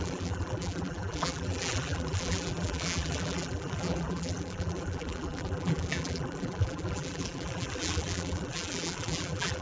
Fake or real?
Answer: fake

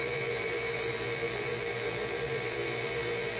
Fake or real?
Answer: fake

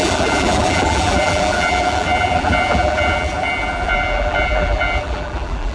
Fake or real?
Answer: fake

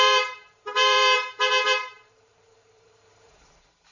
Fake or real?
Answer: fake